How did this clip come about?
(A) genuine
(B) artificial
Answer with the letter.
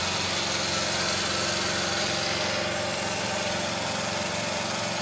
A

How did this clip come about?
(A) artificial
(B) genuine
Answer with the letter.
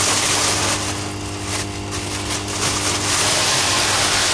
B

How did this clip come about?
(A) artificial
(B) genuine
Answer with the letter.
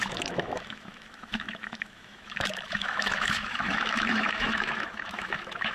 A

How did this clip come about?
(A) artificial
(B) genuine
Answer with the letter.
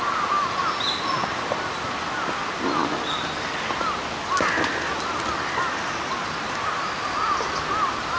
B